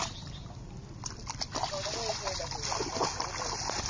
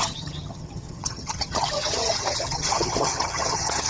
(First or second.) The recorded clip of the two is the first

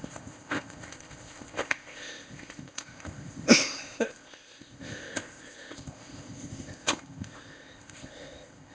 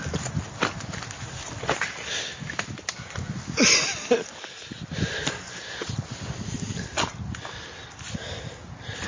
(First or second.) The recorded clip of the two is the second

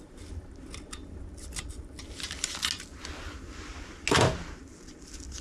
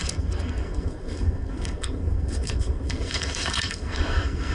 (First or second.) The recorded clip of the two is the first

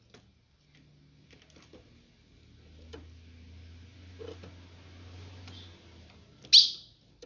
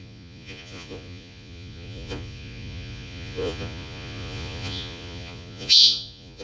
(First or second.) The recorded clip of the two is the first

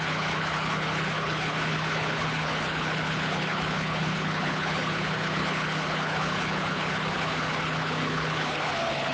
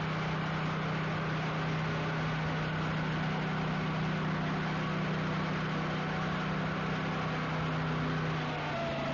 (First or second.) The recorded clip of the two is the second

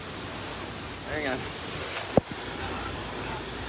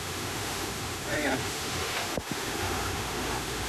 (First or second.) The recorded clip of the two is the first